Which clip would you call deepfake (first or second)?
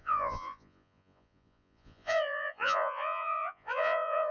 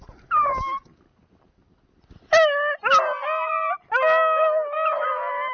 first